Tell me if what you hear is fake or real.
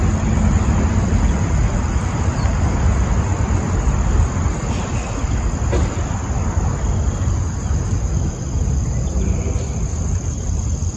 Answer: real